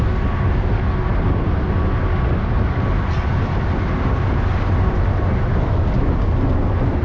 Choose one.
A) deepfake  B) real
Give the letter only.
B